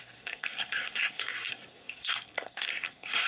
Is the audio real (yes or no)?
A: no